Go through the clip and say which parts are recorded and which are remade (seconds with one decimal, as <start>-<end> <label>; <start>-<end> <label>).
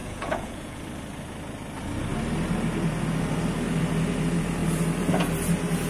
0.0-0.8 remade; 0.8-5.9 recorded